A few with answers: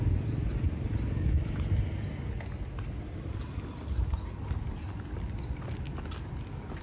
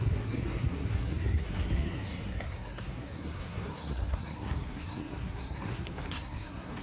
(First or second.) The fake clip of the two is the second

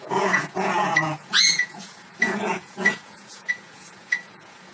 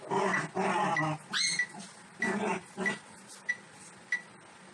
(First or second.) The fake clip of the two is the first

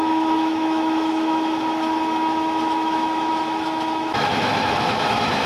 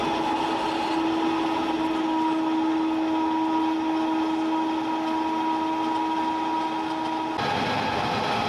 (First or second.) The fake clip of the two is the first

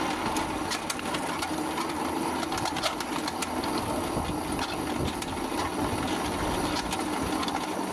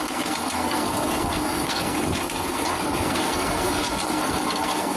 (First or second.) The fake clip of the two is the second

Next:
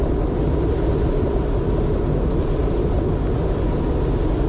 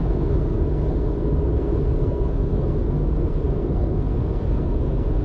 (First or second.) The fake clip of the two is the second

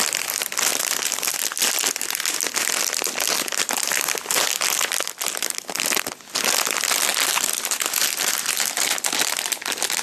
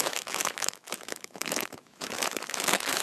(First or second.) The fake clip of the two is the second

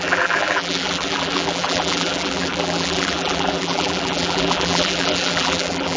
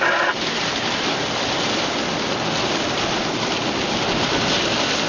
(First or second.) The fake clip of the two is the first